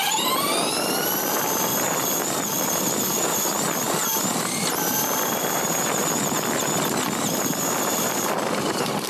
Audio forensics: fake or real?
real